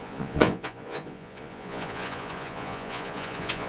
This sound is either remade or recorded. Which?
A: remade